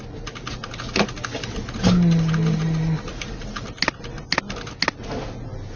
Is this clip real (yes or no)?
yes